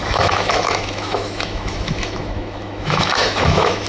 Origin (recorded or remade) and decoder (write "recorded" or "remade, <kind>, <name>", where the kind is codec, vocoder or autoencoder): remade, autoencoder, DAC-VAE